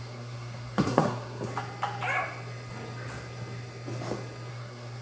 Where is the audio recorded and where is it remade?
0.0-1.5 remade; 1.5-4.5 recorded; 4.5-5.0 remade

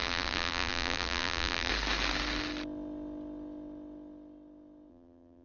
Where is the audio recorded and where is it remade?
0.0-1.7 remade; 1.7-4.9 recorded; 4.9-5.4 remade

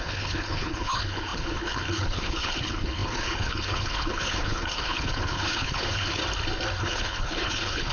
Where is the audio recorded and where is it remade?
0.0-6.2 remade; 6.2-6.8 recorded; 6.8-7.9 remade

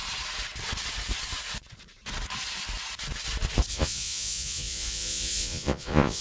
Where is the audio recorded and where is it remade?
0.0-3.7 recorded; 3.7-6.2 remade

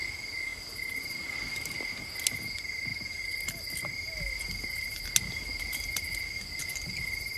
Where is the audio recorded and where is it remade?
0.0-6.6 recorded; 6.6-7.4 remade